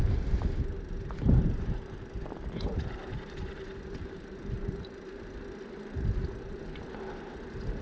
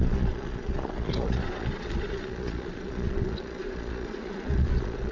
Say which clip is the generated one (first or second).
second